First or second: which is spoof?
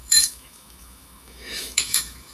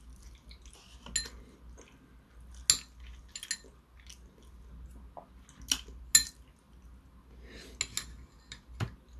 first